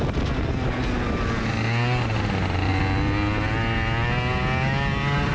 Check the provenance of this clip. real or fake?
real